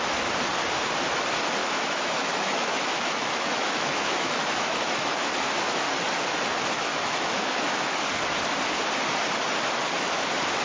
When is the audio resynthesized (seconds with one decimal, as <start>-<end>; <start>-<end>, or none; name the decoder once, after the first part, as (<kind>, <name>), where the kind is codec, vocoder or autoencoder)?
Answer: 1.6-5.3 (autoencoder, DAC-VAE); 6.9-8.0